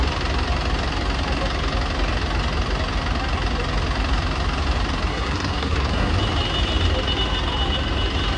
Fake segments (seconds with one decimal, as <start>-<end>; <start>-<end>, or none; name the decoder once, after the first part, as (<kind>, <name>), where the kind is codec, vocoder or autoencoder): 5.1-6.1 (codec, SNAC)